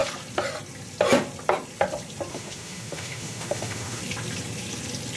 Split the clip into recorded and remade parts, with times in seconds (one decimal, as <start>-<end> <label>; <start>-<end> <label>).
0.0-2.3 recorded; 2.3-4.0 remade; 4.0-5.2 recorded